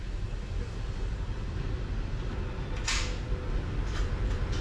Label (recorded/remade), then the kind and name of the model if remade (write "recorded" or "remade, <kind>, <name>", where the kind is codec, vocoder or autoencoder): recorded